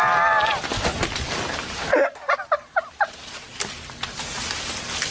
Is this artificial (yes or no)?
no